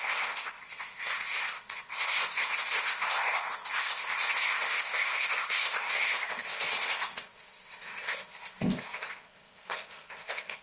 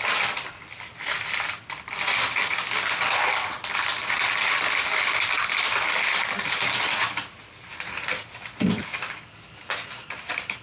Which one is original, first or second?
second